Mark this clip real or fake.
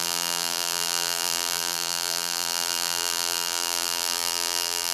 fake